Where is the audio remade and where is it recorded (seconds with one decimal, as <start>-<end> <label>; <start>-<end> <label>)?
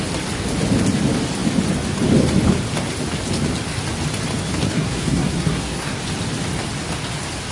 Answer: 0.0-4.6 recorded; 4.6-6.0 remade; 6.0-7.5 recorded